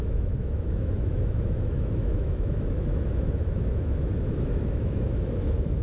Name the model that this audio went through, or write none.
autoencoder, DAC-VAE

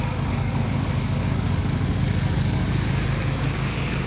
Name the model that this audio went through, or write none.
codec, DAC